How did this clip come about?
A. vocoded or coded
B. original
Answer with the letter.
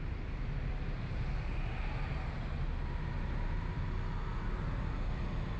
B